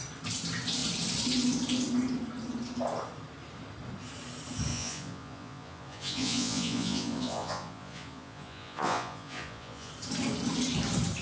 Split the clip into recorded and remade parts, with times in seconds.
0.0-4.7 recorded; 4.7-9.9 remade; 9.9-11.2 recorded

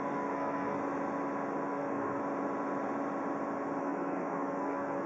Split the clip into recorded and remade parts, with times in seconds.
0.0-0.8 remade; 0.8-1.7 recorded; 1.7-2.2 remade; 2.2-3.8 recorded; 3.8-5.1 remade